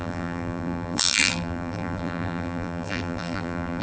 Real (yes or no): no